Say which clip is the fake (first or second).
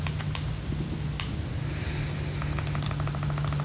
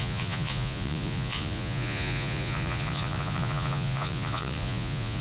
second